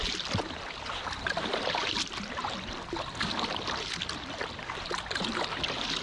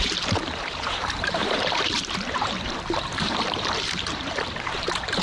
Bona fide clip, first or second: first